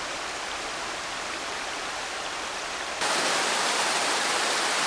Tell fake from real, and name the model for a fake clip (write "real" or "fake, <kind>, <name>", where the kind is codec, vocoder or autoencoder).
real